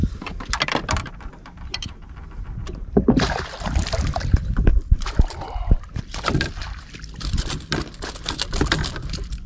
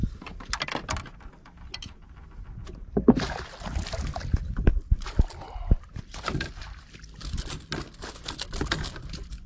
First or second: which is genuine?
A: second